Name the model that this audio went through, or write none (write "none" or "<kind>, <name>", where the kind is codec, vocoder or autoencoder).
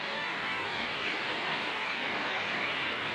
codec, DAC